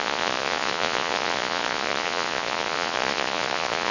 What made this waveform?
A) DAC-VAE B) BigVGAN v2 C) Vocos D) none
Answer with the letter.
C